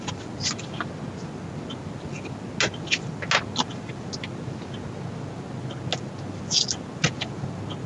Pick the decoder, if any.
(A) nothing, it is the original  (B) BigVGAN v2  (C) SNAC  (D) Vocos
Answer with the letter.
A